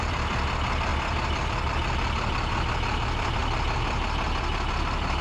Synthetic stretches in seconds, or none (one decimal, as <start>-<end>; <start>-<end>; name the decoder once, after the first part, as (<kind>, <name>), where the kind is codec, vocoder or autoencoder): 0.0-0.9 (vocoder, BigVGAN v2); 1.7-3.4; 4.7-5.2